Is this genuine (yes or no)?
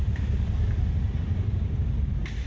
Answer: no